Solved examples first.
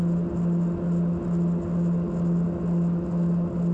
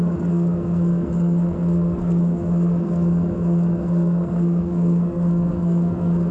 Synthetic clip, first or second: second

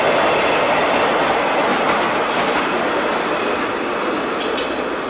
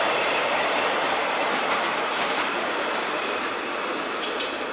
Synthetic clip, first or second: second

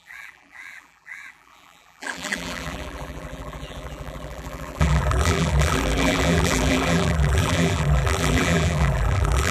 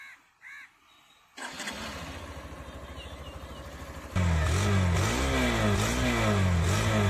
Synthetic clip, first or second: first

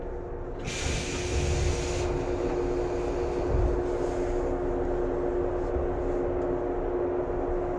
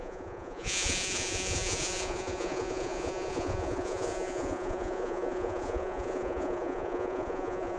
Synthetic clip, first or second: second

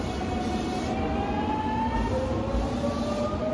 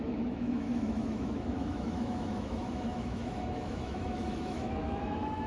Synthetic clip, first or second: second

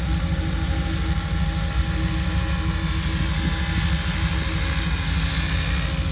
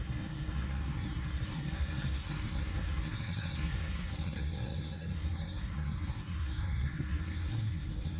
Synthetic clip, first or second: second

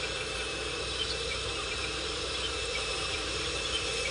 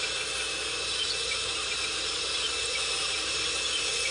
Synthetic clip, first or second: first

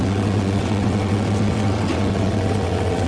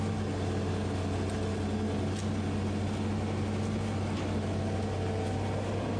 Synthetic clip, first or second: first